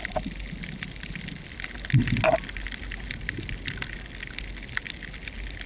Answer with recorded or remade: recorded